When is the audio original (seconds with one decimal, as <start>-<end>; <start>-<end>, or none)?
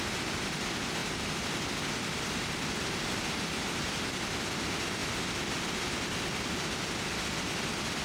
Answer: 0.0-8.0